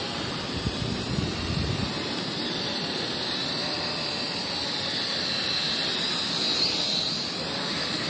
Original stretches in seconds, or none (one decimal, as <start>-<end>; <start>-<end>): 0.0-8.1